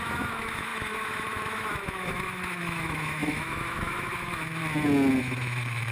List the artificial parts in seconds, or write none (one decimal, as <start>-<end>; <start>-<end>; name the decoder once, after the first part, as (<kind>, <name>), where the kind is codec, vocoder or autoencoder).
0.0-4.6 (autoencoder, DAC-VAE); 5.2-5.9